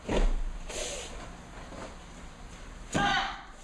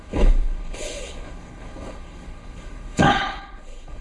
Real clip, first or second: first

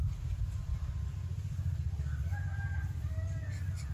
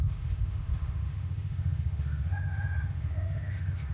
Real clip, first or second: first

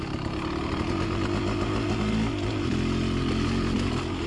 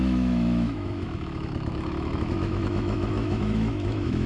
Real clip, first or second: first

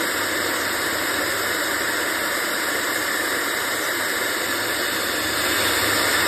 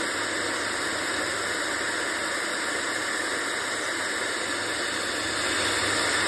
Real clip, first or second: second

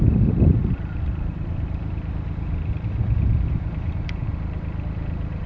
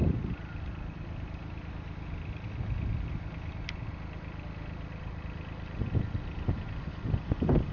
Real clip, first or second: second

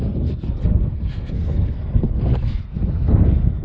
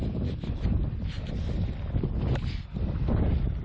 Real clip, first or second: second